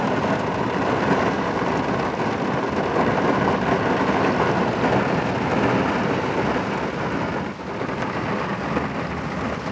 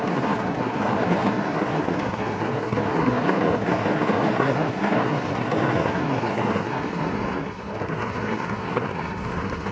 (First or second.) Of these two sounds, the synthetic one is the second